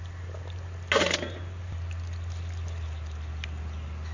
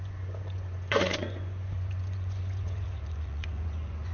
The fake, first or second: second